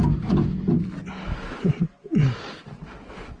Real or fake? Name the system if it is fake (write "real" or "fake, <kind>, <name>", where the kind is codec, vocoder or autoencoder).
real